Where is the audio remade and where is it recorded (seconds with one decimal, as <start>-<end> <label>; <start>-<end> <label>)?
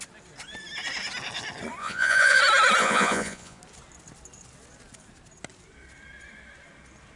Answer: 0.0-1.8 recorded; 1.8-2.4 remade; 2.4-2.8 recorded; 2.8-3.6 remade; 3.6-7.2 recorded